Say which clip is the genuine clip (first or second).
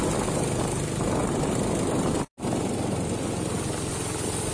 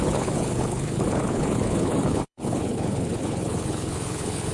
first